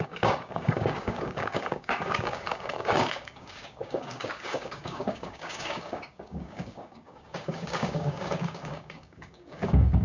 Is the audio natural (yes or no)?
no